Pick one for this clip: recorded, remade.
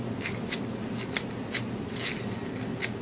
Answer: recorded